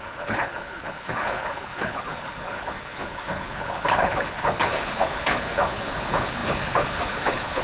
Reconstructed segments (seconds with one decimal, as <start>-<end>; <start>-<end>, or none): 0.0-7.6